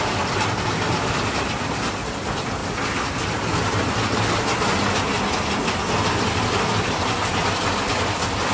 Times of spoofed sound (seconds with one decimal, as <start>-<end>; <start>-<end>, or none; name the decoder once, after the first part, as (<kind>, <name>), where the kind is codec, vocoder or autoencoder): none